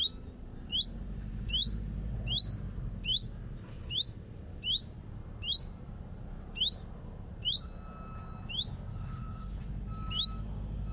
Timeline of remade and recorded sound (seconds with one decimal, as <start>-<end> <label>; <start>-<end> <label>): 0.0-8.9 recorded; 8.9-9.6 remade; 9.6-10.9 recorded